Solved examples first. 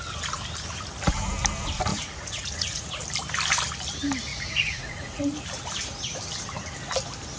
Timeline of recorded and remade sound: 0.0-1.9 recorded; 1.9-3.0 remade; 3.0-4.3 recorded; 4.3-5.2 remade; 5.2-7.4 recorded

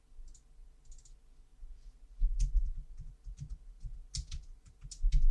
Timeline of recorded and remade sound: 0.0-5.3 recorded

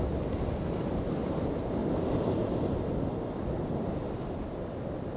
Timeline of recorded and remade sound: 0.0-5.2 recorded

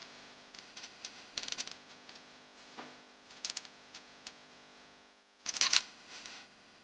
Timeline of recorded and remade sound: 0.0-0.6 recorded; 0.6-1.7 remade; 1.7-5.8 recorded; 5.8-6.8 remade

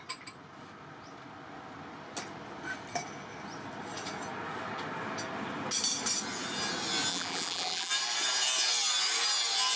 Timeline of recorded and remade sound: 0.0-7.1 recorded; 7.1-7.9 remade; 7.9-9.8 recorded

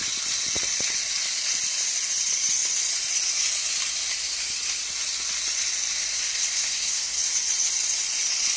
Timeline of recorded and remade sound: 0.0-6.1 recorded; 6.1-7.2 remade; 7.2-8.6 recorded

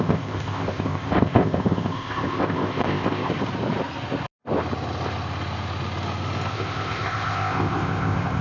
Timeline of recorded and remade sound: 0.0-3.3 remade; 3.3-6.5 recorded; 6.5-8.4 remade

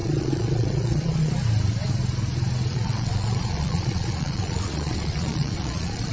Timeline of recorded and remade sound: 0.0-1.3 remade; 1.3-2.7 recorded; 2.7-6.1 remade